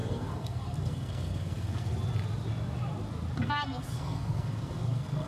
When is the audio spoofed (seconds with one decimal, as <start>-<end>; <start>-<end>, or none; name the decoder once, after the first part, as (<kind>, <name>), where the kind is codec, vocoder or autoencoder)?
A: 0.0-1.9 (codec, SNAC); 3.4-5.3